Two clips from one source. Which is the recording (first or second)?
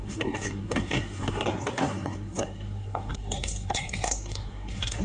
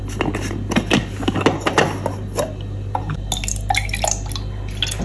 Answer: second